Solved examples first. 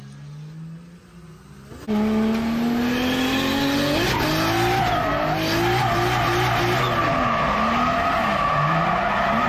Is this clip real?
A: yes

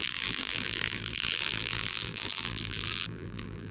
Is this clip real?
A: no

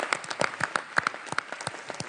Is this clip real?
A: yes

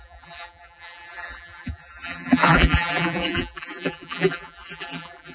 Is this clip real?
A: no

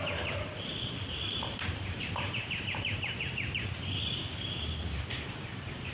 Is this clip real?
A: no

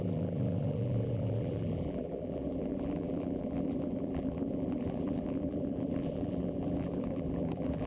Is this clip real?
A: no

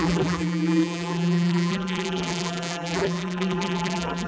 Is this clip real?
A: no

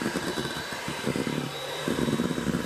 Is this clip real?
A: no